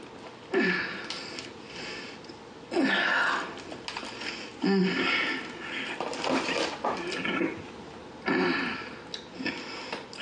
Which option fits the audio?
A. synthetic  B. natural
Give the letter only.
B